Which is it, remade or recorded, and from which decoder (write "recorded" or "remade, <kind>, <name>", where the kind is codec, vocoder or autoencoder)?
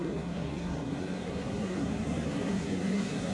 remade, codec, SNAC